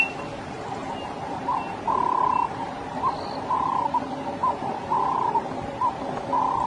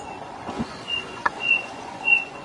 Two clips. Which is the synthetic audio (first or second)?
second